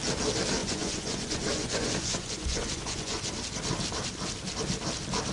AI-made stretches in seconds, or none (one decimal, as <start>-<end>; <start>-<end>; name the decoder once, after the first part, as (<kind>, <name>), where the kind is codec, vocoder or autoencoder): 0.6-3.2 (vocoder, Vocos)